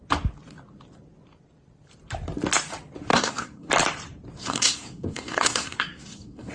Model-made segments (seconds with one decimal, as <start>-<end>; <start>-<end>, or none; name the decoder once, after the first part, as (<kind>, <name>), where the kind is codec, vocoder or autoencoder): 3.1-3.7 (codec, SNAC); 4.4-6.5